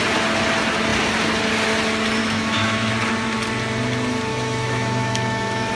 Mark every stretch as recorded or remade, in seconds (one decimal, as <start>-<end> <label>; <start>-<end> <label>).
0.0-2.2 recorded; 2.2-2.9 remade; 2.9-4.3 recorded; 4.3-5.7 remade